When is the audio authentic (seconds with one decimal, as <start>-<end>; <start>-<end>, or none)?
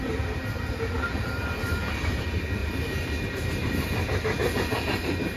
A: none